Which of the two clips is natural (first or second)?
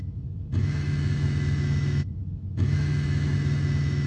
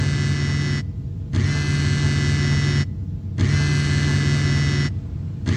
second